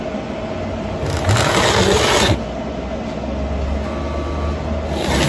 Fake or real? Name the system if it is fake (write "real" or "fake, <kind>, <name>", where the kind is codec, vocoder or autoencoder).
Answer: real